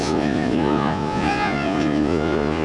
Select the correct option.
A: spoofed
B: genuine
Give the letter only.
A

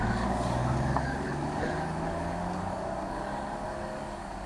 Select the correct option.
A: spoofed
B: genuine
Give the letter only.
A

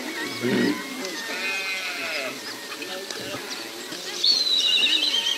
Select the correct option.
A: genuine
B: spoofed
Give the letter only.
A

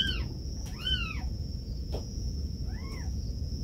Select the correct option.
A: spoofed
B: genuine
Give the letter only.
A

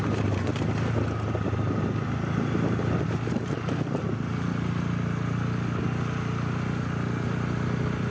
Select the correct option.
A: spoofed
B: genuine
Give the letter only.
B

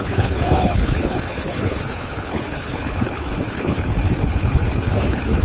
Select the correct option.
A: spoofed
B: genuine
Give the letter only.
A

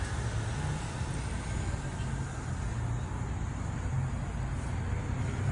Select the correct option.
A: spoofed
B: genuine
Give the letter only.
B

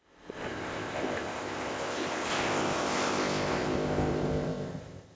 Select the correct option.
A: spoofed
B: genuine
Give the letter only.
A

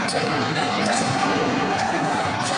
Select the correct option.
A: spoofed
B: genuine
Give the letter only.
A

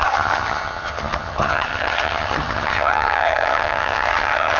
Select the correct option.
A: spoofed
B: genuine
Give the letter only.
A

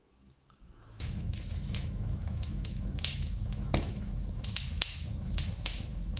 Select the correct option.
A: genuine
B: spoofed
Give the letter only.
B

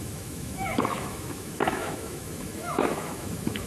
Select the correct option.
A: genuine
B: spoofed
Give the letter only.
B